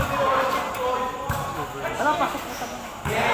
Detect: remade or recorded recorded